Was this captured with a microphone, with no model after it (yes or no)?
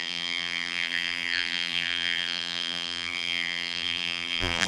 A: no